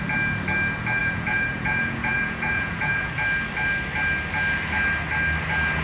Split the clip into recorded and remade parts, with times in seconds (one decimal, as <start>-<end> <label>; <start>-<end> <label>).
0.0-1.0 recorded; 1.0-3.1 remade; 3.1-5.8 recorded